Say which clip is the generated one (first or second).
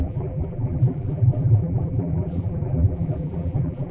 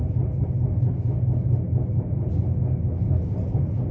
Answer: first